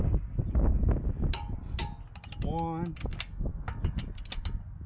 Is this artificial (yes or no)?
no